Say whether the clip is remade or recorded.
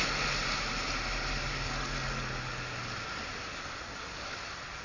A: recorded